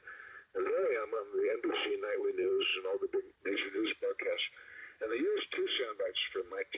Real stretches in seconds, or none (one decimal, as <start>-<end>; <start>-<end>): 2.7-3.2